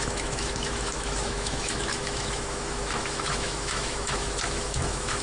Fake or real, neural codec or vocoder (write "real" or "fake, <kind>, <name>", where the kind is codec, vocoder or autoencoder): fake, autoencoder, DAC-VAE